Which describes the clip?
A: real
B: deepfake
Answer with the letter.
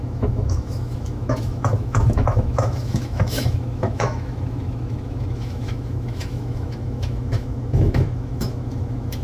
B